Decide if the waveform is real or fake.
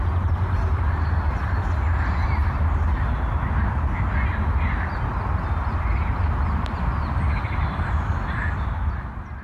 real